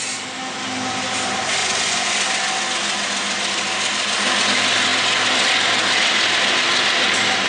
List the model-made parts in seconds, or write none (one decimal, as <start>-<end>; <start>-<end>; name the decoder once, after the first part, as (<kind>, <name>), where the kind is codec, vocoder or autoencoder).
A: 1.6-2.1 (vocoder, Vocos)